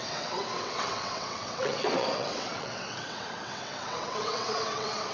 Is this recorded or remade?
remade